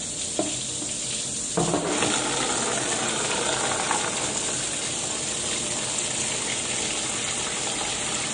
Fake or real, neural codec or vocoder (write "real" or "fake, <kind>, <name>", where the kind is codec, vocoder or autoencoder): real